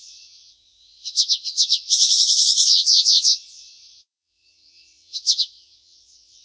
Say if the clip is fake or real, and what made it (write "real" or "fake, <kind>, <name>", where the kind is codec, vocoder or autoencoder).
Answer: fake, vocoder, WaveNeXt